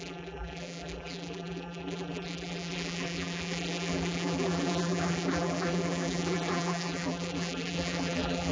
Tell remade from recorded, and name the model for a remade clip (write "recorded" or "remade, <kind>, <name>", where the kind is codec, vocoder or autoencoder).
remade, vocoder, BigVGAN v2